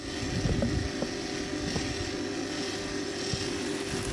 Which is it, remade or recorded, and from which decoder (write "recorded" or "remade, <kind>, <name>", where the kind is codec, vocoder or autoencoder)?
recorded